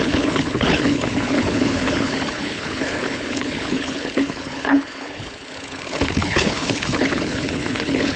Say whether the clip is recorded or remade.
remade